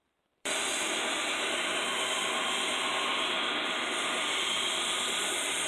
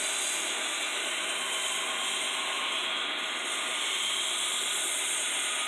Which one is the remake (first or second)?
first